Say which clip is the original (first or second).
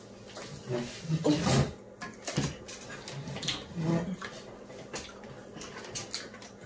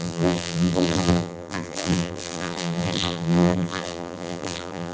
first